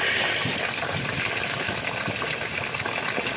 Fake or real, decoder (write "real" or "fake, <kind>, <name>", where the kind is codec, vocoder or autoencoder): real